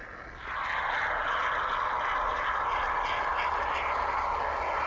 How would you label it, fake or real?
real